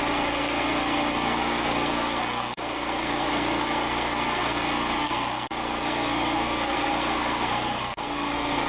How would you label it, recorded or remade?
remade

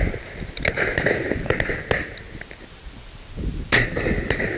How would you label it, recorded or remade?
recorded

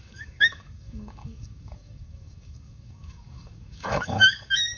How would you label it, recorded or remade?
remade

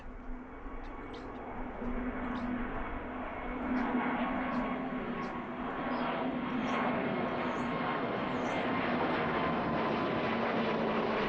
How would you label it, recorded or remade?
recorded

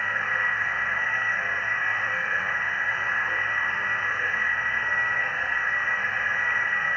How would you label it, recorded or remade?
remade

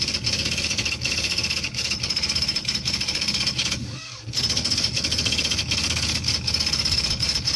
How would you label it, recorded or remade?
remade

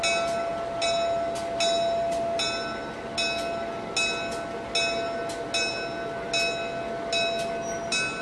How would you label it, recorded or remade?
recorded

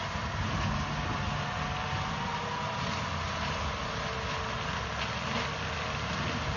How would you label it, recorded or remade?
recorded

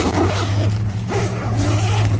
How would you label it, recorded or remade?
recorded